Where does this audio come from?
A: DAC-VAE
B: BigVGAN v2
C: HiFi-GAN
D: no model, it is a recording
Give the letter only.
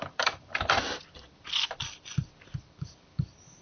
B